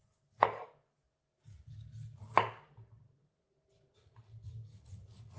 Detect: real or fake real